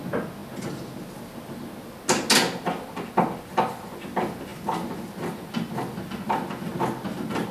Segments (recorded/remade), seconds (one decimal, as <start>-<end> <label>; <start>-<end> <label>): 0.0-7.5 recorded